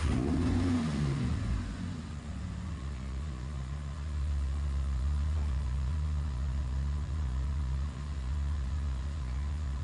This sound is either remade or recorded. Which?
remade